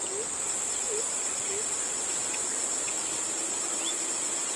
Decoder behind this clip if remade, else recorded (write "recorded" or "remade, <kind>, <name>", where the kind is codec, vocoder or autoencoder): recorded